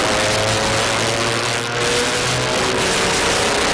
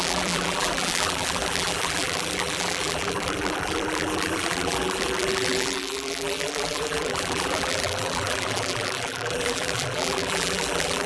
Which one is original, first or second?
first